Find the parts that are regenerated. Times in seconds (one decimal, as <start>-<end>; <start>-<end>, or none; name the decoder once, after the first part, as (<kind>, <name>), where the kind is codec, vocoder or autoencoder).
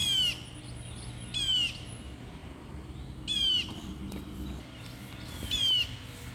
none